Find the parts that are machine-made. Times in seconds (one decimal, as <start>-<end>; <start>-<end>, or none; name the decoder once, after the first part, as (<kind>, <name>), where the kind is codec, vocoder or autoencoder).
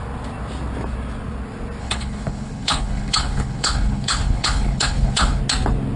1.8-5.4 (codec, HILCodec)